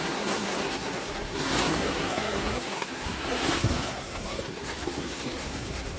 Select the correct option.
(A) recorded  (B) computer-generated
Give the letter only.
B